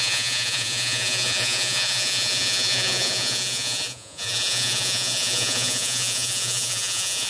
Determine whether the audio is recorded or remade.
remade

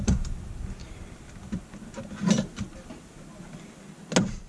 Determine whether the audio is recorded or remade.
recorded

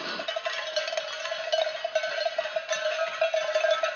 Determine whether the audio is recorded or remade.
recorded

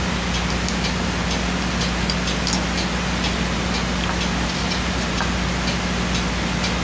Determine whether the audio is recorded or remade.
recorded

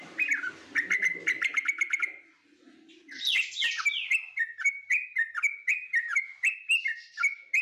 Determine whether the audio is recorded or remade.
recorded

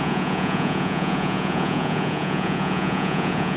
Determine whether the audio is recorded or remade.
remade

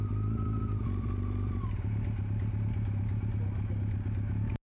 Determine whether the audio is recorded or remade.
recorded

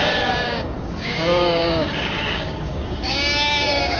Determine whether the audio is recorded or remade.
remade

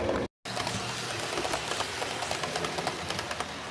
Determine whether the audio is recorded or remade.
recorded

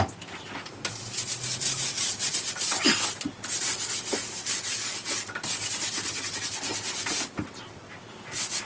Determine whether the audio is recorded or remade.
recorded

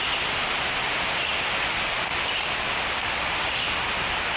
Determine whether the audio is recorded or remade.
recorded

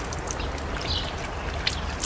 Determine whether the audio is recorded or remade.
recorded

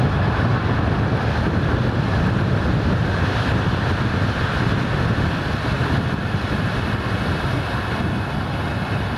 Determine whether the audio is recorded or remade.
recorded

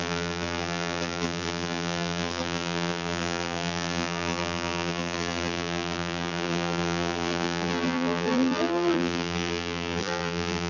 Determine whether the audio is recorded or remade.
remade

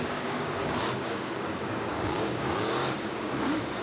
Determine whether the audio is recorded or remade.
remade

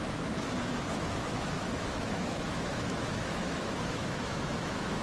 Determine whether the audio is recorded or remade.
remade